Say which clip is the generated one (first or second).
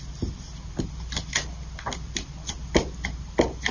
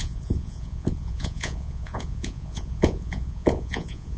second